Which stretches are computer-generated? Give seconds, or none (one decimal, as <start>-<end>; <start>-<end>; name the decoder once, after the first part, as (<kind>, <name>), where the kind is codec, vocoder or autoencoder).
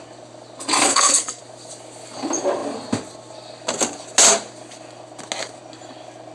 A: 0.9-1.4 (codec, SNAC)